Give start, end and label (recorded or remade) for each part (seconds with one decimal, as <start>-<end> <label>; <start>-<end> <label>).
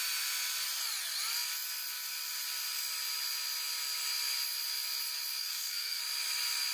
0.0-5.4 recorded; 5.4-6.0 remade; 6.0-6.7 recorded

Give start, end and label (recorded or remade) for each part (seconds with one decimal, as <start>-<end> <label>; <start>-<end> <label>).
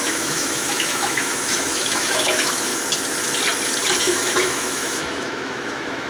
0.0-2.7 remade; 2.7-4.0 recorded; 4.0-6.1 remade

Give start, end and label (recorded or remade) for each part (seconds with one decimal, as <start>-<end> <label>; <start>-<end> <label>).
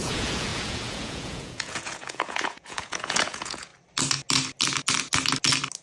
0.0-3.7 remade; 3.7-5.8 recorded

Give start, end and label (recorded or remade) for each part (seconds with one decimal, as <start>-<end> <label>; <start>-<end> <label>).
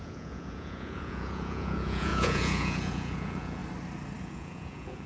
0.0-3.6 remade; 3.6-4.2 recorded; 4.2-5.1 remade